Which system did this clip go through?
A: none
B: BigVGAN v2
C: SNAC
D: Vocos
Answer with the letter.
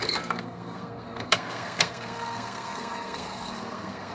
C